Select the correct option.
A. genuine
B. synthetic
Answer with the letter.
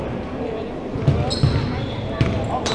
A